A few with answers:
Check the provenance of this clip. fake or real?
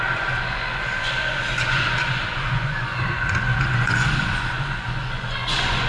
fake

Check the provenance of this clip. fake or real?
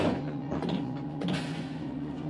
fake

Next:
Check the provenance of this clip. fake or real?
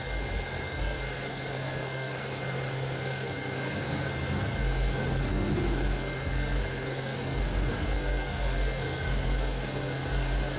fake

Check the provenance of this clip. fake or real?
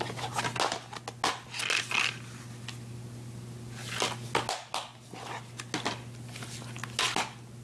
real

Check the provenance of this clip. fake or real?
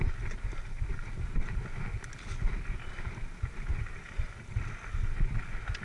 real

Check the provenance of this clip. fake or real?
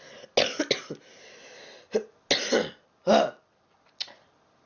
real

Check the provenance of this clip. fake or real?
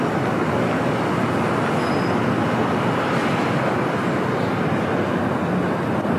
real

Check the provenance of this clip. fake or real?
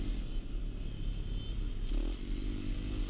real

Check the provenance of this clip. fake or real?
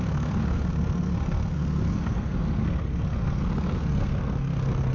fake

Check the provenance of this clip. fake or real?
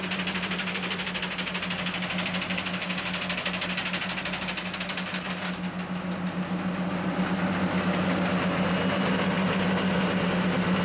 real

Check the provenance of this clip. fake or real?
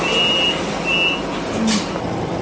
real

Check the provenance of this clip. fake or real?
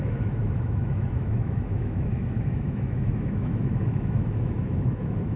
fake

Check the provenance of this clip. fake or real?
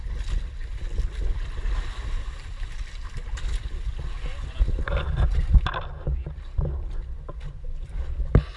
real